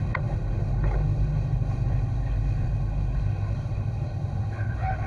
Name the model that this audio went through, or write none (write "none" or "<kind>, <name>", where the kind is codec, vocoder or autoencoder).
codec, HILCodec